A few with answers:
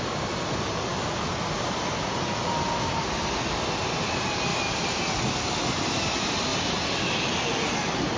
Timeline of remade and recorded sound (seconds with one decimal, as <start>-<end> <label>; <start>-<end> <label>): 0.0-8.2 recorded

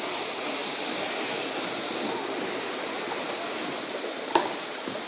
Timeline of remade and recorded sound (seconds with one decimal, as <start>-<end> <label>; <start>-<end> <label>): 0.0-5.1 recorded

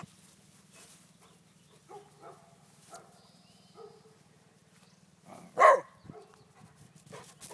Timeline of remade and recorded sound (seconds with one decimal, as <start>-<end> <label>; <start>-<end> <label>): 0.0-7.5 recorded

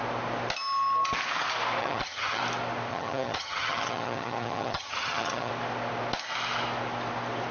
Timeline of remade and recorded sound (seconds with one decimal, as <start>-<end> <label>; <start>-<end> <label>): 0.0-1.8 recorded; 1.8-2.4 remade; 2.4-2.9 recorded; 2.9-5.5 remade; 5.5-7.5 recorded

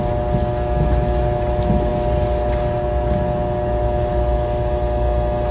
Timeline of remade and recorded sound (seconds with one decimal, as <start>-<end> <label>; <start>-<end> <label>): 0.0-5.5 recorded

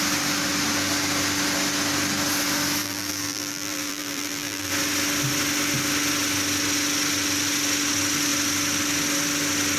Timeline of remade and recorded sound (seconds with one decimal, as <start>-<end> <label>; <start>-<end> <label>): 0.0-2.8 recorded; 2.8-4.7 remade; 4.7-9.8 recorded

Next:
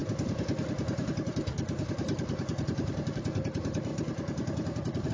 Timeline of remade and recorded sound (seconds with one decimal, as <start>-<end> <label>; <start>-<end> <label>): 0.0-3.1 remade; 3.1-3.9 recorded; 3.9-5.1 remade

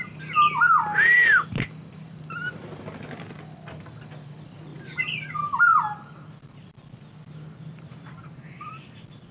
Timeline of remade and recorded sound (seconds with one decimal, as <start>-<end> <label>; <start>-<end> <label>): 0.0-9.3 recorded